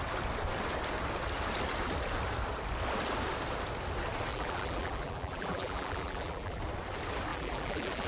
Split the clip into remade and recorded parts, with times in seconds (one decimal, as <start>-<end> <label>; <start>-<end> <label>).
0.0-4.3 recorded; 4.3-6.6 remade; 6.6-7.3 recorded; 7.3-8.1 remade